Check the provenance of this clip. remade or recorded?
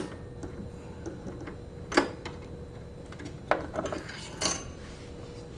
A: recorded